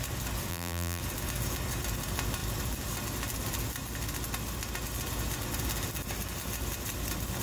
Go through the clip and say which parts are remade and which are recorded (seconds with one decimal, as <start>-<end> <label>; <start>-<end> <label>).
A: 0.0-0.5 recorded; 0.5-1.0 remade; 1.0-7.4 recorded